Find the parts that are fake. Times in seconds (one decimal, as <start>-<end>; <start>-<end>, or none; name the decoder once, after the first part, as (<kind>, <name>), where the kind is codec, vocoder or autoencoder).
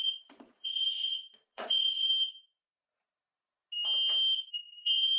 0.0-2.1 (vocoder, Vocos); 4.5-5.2